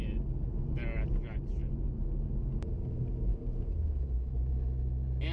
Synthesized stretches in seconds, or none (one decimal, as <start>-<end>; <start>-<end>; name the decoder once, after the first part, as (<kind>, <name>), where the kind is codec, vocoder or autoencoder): 0.5-1.2 (vocoder, BigVGAN v2)